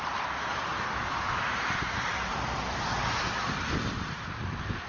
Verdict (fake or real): real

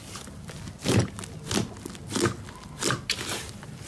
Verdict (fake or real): real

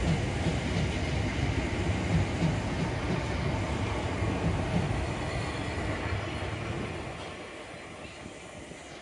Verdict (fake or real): real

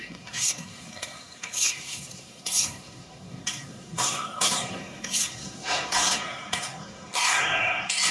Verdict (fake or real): fake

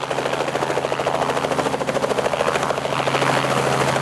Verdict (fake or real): real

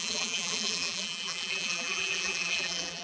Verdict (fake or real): fake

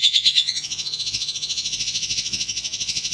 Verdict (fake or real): fake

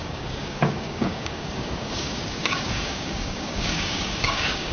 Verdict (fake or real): fake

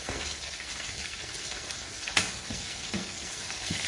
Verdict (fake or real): fake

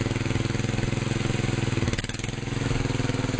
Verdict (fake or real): real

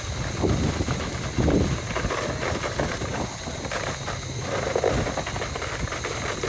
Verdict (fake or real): real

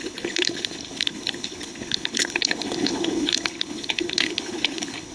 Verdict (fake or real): fake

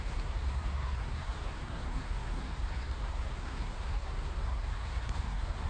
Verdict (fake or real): fake